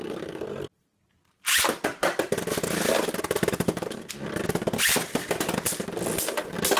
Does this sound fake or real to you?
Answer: real